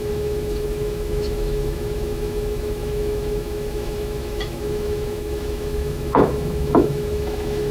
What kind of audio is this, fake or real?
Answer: fake